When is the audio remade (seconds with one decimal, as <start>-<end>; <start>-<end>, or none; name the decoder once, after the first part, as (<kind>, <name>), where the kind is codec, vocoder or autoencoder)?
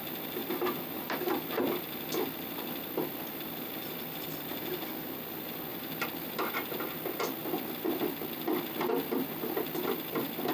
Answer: 0.4-3.1 (vocoder, BigVGAN v2); 5.7-6.5; 7.4-10.5